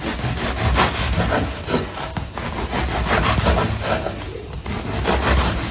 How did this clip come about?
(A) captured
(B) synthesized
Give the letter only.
A